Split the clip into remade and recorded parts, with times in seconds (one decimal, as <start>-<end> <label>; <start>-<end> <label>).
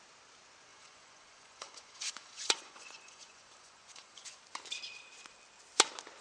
0.0-0.7 recorded; 0.7-4.4 remade; 4.4-6.2 recorded